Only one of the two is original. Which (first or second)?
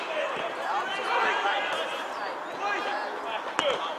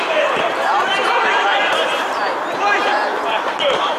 first